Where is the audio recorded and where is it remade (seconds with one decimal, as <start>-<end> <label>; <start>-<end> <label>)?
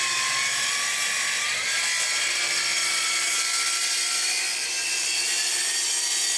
0.0-2.8 recorded; 2.8-3.4 remade; 3.4-6.4 recorded